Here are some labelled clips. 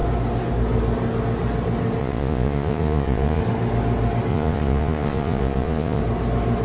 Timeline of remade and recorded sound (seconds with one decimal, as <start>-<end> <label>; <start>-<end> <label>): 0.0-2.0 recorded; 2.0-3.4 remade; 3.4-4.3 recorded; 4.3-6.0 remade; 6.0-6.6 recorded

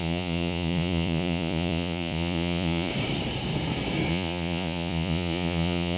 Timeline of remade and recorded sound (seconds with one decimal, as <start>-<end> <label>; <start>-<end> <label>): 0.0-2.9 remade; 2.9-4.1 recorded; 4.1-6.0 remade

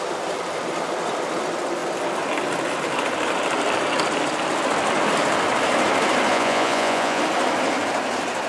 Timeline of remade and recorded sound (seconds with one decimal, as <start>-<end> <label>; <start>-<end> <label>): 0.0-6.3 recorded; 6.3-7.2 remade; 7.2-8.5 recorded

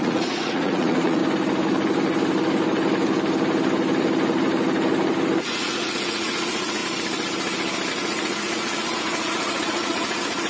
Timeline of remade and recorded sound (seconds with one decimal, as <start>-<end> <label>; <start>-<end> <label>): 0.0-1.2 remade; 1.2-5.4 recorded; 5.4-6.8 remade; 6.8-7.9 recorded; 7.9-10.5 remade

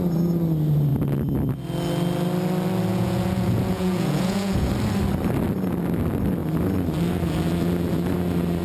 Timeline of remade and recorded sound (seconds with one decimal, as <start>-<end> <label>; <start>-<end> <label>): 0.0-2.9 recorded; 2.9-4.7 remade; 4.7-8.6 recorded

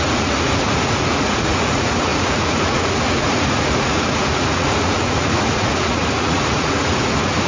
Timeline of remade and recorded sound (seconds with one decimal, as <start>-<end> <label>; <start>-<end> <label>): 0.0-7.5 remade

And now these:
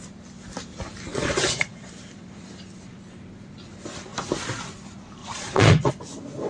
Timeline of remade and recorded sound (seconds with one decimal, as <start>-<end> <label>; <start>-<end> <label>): 0.0-1.1 recorded; 1.1-1.9 remade; 1.9-5.2 recorded; 5.2-5.9 remade; 5.9-6.5 recorded